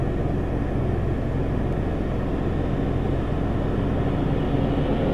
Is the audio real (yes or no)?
yes